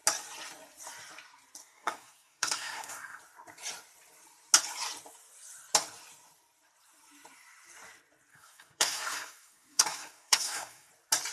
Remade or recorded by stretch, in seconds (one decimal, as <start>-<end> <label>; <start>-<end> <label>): 0.0-1.6 recorded; 1.6-3.2 remade; 3.2-8.3 recorded; 8.3-10.9 remade; 10.9-11.3 recorded